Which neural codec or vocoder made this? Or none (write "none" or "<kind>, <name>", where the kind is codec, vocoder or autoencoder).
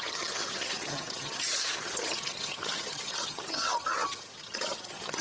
vocoder, HiFi-GAN